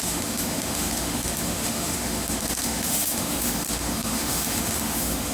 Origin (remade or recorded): remade